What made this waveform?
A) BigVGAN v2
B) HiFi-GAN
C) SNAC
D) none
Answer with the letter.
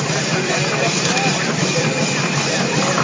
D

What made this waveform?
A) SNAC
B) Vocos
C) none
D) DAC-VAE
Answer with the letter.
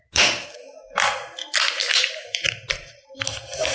C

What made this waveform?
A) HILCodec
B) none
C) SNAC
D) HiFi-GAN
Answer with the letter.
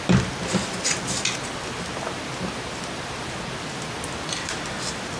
B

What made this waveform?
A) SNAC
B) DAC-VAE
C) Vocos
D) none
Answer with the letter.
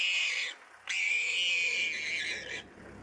D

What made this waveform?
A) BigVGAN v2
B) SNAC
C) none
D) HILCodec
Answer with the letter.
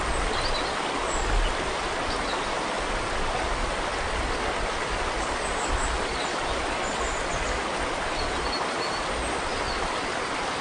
C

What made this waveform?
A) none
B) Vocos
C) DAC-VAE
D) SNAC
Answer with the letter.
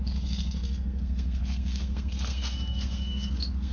D